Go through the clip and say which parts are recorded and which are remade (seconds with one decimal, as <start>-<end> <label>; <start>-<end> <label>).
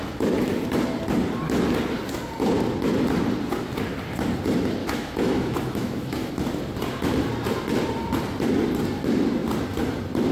0.0-4.8 recorded; 4.8-6.3 remade; 6.3-10.3 recorded